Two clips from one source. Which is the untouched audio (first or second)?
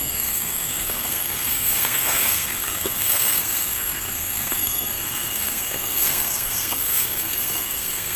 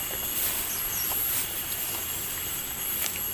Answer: second